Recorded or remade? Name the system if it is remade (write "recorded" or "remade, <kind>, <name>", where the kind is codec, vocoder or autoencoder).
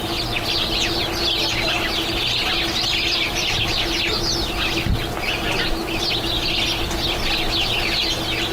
recorded